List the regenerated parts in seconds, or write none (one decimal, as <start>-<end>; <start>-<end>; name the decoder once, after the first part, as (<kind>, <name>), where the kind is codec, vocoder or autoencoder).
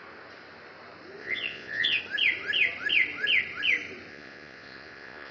1.2-2.0 (vocoder, Vocos); 4.1-5.3